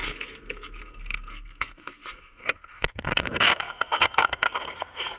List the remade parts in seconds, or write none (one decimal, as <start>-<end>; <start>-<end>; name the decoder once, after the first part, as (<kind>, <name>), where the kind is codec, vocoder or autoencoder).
0.0-5.2 (codec, SNAC)